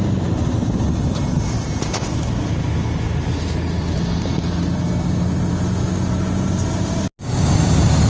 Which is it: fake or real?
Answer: real